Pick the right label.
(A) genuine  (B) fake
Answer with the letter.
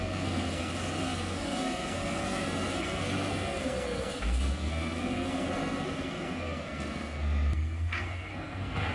B